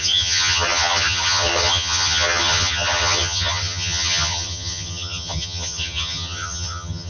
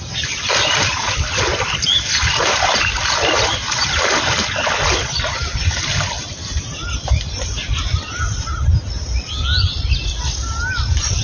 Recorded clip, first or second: second